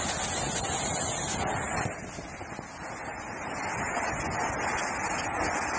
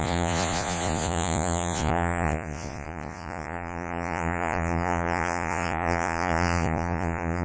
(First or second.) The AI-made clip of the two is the second